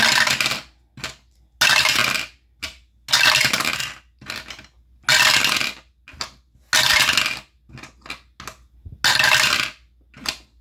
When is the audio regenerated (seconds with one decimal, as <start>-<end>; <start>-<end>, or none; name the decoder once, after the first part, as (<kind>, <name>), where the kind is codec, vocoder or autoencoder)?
none